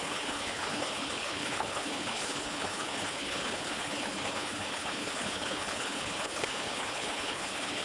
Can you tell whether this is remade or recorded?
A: remade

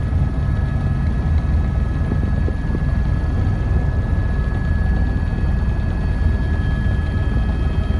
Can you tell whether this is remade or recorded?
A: recorded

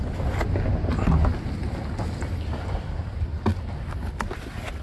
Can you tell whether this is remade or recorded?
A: recorded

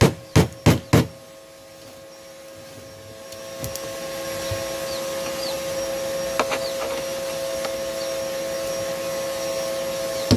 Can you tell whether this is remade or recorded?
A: recorded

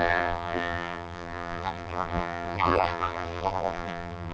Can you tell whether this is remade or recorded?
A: remade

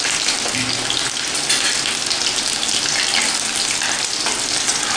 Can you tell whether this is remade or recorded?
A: recorded